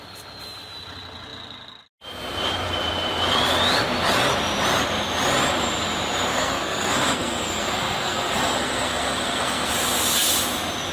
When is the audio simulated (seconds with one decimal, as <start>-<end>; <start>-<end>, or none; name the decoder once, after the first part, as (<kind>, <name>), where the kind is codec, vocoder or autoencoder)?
6.3-9.7 (codec, SNAC)